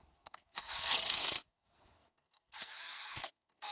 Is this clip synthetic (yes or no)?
yes